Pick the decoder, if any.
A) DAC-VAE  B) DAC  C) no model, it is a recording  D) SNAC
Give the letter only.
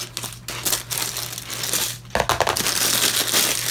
C